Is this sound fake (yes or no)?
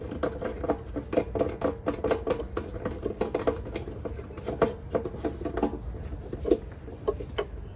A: no